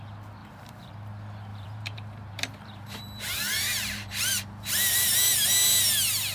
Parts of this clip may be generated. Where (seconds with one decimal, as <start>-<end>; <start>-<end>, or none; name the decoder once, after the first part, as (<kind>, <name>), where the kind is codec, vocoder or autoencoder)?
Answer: 0.4-0.9 (vocoder, BigVGAN v2); 1.5-5.3